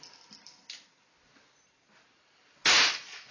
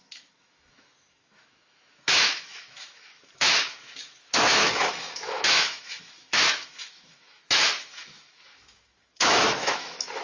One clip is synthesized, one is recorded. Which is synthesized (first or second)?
second